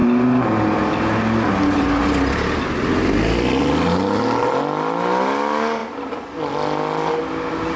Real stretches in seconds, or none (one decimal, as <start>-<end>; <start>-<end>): 0.0-7.8